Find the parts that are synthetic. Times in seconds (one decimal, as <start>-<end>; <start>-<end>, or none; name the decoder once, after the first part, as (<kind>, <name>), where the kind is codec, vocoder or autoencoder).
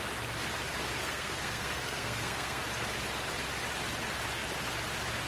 1.0-2.6 (codec, SNAC)